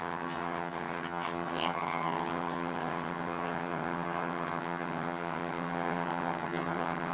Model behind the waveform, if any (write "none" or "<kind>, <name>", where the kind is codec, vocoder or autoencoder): vocoder, HiFi-GAN